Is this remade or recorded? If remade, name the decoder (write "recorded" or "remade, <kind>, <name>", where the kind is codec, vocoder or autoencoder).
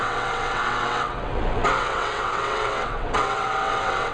remade, vocoder, WaveNeXt